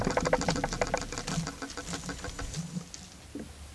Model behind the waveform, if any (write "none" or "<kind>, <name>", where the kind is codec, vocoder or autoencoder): none